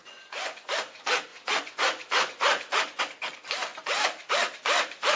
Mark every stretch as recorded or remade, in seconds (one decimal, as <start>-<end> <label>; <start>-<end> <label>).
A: 0.0-0.7 remade; 0.7-1.3 recorded; 1.3-3.0 remade; 3.0-5.2 recorded